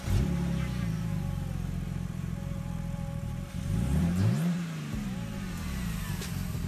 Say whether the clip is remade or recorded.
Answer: remade